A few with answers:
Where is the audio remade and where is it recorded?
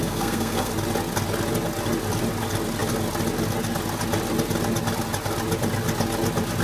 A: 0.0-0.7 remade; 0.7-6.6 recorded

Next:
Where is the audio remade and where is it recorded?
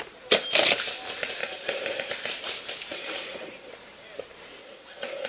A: 0.0-1.4 recorded; 1.4-2.1 remade; 2.1-2.9 recorded; 2.9-3.7 remade; 3.7-4.6 recorded; 4.6-5.3 remade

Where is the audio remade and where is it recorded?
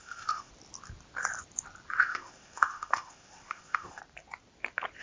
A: 0.0-0.5 remade; 0.5-2.0 recorded; 2.0-4.0 remade; 4.0-5.0 recorded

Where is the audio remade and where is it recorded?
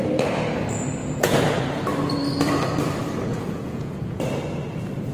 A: 0.0-1.0 recorded; 1.0-1.6 remade; 1.6-3.3 recorded; 3.3-4.2 remade; 4.2-5.1 recorded